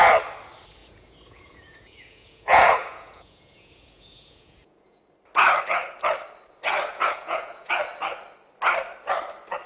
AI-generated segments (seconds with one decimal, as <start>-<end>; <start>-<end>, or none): 0.8-5.0; 6.9-7.7